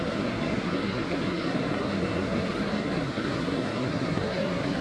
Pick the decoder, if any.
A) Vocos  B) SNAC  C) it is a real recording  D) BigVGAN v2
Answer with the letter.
B